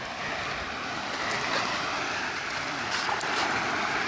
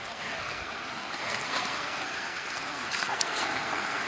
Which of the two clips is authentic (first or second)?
first